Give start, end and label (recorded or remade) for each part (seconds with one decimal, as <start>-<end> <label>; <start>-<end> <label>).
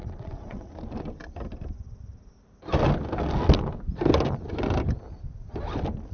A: 0.0-0.7 remade; 0.7-6.1 recorded